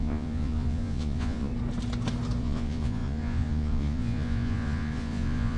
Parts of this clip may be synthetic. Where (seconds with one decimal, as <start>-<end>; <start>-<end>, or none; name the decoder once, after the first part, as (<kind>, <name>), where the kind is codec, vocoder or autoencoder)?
0.0-1.5 (vocoder, Vocos); 2.4-5.6